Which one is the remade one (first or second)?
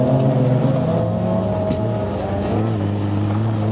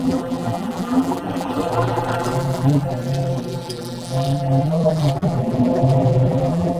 second